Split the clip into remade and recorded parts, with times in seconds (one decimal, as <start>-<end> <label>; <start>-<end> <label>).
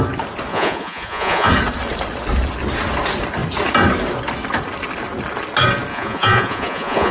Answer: 0.0-0.5 recorded; 0.5-1.5 remade; 1.5-5.9 recorded; 5.9-7.1 remade